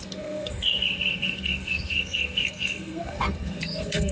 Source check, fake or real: fake